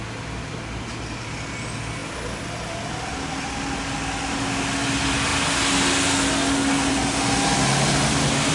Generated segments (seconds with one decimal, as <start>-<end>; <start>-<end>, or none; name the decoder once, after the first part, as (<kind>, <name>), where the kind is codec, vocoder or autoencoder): none